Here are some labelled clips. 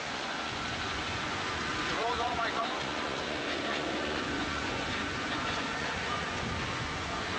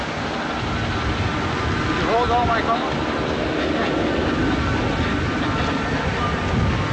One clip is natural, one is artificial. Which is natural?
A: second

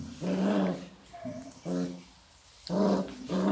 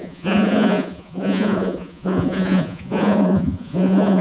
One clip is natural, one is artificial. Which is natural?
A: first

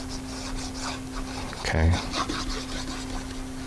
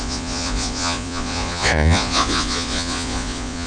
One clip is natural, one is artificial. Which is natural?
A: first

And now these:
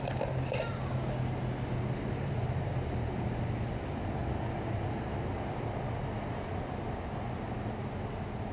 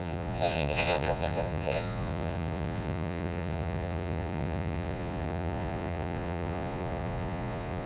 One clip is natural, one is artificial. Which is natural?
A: first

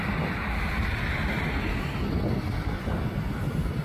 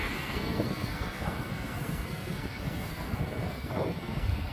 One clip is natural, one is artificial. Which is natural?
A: first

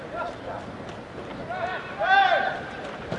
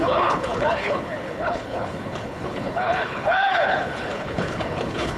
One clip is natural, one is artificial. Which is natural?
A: first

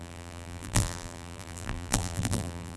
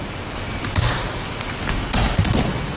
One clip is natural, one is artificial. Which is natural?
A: second